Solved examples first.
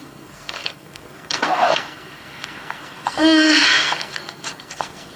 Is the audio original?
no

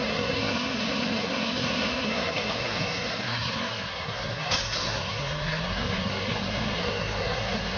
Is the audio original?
no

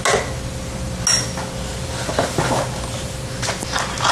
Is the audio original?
yes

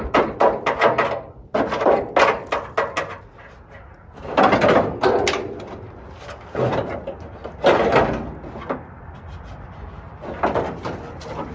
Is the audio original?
yes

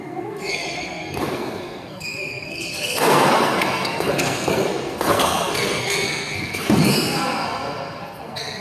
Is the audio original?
no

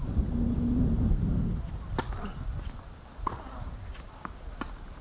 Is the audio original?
yes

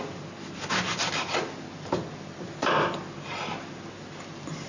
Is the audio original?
yes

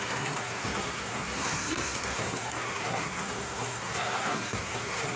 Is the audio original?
no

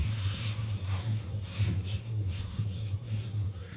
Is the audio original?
no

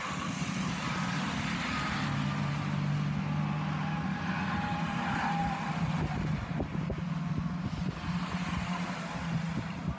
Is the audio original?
yes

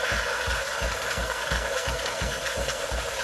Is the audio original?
no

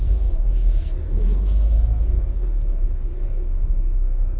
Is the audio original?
no